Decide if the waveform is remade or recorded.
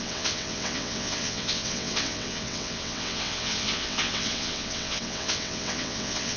remade